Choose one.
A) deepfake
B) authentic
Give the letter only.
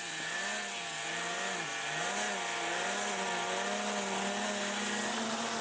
B